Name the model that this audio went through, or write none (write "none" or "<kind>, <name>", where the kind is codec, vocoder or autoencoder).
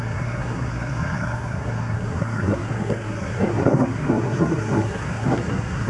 codec, SNAC